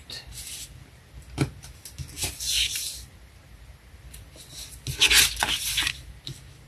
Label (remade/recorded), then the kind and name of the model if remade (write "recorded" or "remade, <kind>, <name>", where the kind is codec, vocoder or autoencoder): recorded